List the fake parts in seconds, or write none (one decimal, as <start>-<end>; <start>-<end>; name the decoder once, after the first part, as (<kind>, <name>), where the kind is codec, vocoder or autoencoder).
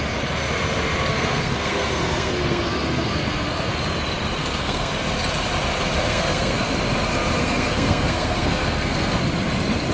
1.1-3.7 (codec, SNAC); 4.4-4.9; 6.1-6.7; 7.4-9.2